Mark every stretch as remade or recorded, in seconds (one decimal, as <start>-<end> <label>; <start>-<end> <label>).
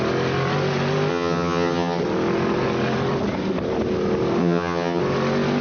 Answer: 0.0-1.1 recorded; 1.1-2.0 remade; 2.0-4.4 recorded; 4.4-5.0 remade; 5.0-5.6 recorded